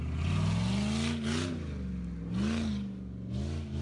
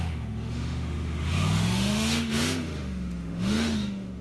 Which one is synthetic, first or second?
second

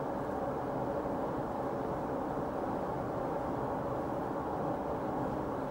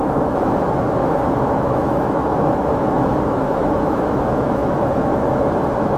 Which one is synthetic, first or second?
second